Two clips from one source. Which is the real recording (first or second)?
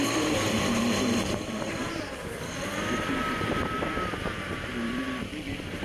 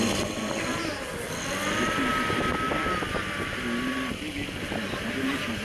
second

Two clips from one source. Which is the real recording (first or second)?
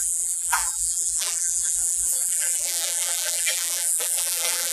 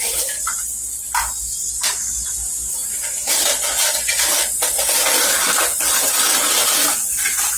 second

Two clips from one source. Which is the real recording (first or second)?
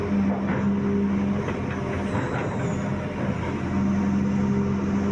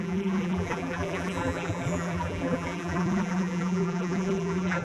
first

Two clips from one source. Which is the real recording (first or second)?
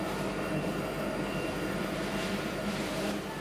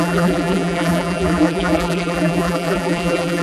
first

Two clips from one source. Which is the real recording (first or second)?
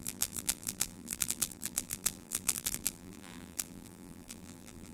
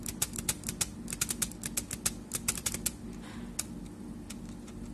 second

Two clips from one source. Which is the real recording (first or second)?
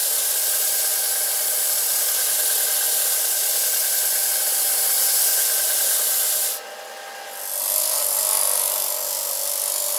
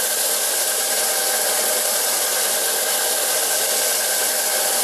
first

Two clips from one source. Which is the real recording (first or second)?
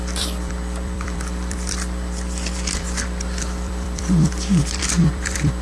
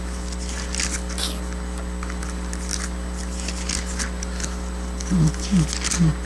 second